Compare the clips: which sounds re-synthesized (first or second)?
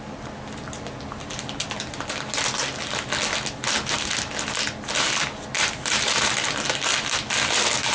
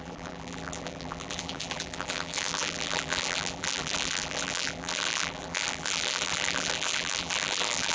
second